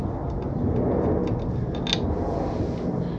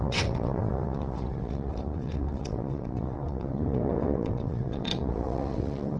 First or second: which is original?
first